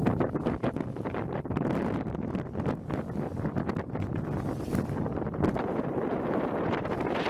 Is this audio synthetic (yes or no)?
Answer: no